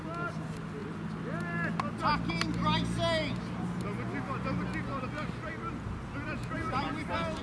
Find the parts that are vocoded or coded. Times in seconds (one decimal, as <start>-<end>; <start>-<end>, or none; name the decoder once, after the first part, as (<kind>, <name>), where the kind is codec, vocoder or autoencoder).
none